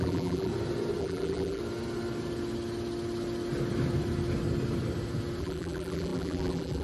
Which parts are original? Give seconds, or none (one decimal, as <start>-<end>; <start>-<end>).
0.5-1.0; 1.6-5.4